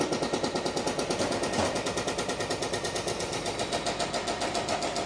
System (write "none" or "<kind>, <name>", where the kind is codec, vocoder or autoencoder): none